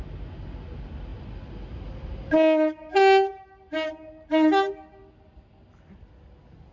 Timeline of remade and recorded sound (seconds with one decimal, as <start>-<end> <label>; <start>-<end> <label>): 0.0-6.7 recorded